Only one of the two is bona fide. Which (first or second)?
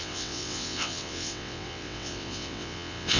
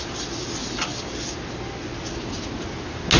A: second